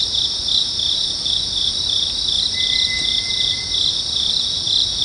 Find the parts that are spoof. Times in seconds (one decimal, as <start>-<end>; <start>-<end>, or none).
0.0-0.5